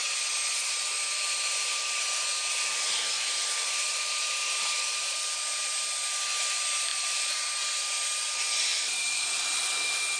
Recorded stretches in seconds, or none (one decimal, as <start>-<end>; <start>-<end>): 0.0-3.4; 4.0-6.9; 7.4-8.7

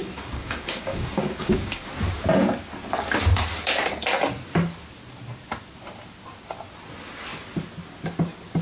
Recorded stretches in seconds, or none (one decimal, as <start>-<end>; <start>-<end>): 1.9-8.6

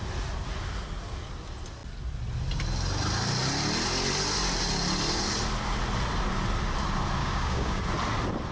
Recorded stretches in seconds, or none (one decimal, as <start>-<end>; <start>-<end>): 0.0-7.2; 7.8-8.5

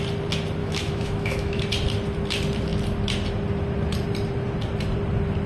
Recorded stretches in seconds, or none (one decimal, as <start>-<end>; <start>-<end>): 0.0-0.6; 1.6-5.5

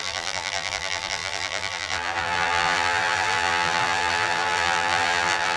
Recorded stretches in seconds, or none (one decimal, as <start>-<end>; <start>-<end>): none

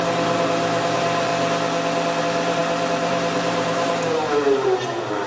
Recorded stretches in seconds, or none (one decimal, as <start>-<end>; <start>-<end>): 1.3-2.2

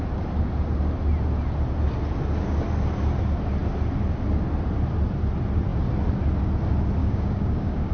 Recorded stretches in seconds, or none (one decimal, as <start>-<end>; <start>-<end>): 0.0-7.0